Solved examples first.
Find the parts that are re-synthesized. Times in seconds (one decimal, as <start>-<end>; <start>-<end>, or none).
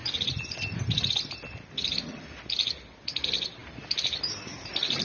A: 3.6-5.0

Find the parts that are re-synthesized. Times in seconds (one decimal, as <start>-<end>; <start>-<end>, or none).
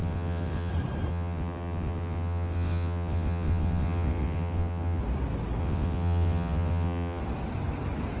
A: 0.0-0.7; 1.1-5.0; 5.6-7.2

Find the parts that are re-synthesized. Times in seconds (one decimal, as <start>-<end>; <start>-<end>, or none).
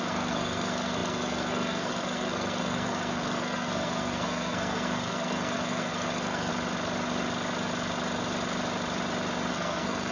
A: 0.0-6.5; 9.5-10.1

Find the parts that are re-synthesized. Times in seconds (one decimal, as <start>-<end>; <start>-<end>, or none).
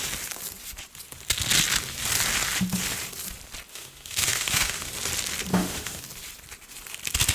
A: 3.7-4.9; 5.5-6.0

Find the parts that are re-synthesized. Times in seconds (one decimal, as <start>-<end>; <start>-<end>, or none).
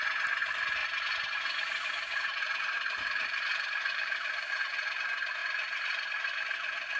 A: 0.8-4.5; 5.4-7.0